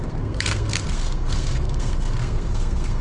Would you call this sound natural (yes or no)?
no